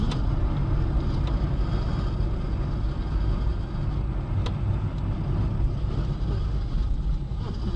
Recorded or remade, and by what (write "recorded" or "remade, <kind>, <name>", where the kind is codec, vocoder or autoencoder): recorded